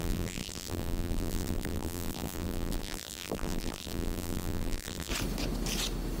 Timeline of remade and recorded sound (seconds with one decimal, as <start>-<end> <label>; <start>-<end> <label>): 0.0-5.1 remade; 5.1-6.2 recorded